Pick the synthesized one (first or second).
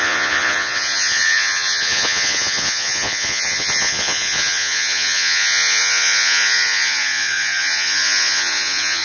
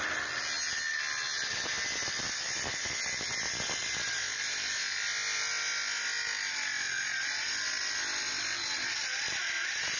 first